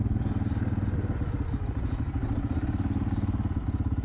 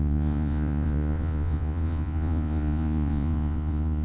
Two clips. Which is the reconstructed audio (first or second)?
second